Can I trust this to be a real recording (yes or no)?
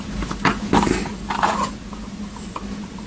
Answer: yes